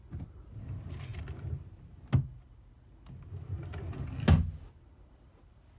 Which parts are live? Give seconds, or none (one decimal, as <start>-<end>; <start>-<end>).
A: 0.0-5.8